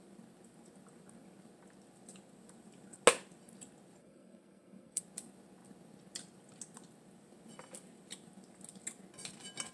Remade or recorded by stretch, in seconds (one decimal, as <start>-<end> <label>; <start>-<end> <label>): 0.0-4.0 recorded; 4.0-5.0 remade; 5.0-9.7 recorded